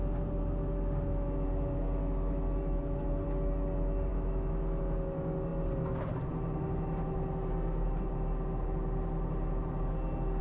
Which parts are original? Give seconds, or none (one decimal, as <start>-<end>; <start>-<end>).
0.0-2.0; 3.0-4.1; 4.8-10.4